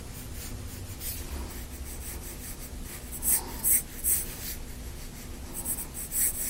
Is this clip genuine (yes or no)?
yes